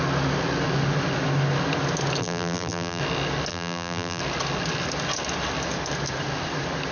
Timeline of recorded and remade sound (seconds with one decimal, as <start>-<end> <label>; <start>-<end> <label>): 0.0-2.2 recorded; 2.2-3.0 remade; 3.0-3.5 recorded; 3.5-4.2 remade; 4.2-6.9 recorded